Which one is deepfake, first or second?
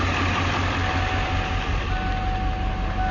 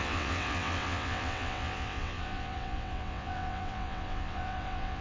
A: second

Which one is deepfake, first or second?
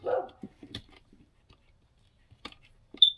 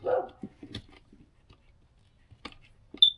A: first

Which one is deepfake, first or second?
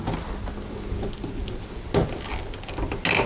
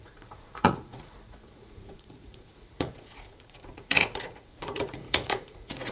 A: second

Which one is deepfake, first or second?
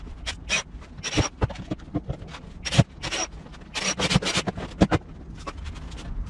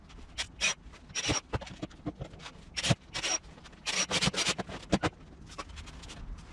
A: second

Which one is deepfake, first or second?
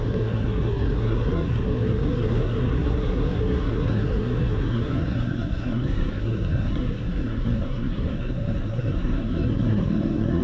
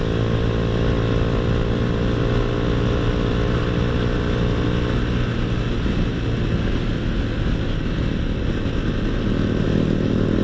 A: first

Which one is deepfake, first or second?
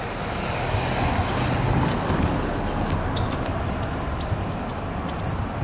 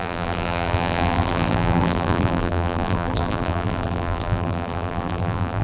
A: second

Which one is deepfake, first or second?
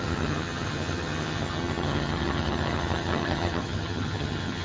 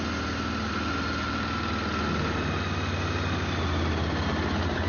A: first